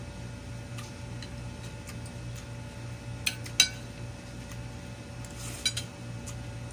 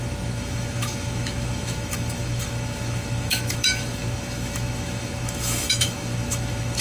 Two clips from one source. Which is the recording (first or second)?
first